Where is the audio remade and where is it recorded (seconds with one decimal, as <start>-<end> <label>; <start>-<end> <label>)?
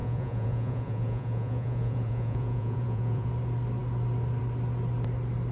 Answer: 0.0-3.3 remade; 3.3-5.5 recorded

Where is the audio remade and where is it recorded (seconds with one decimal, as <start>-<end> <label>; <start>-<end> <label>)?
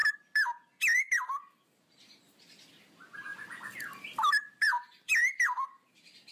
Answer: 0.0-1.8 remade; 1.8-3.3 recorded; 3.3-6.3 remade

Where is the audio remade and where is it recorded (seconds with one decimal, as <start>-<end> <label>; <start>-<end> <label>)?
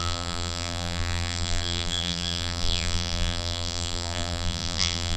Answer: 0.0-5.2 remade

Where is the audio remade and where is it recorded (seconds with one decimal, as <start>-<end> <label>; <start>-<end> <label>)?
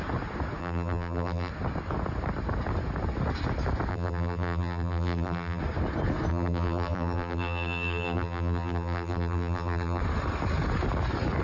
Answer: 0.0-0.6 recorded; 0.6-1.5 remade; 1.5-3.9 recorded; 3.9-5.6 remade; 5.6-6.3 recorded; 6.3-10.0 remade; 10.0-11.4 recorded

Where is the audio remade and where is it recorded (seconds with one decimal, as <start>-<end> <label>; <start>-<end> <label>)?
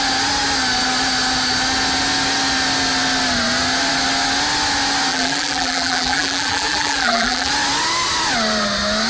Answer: 0.0-5.1 recorded; 5.1-7.5 remade; 7.5-9.1 recorded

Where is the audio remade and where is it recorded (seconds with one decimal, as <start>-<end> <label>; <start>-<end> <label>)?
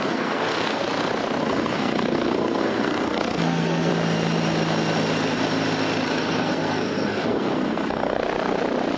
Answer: 0.0-0.8 remade; 0.8-1.4 recorded; 1.4-3.9 remade; 3.9-6.1 recorded; 6.1-8.2 remade; 8.2-9.0 recorded